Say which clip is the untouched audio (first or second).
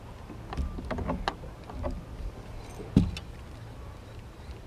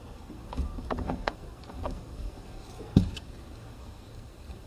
first